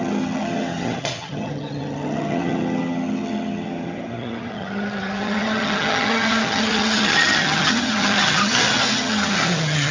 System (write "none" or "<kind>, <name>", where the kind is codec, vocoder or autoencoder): vocoder, HiFi-GAN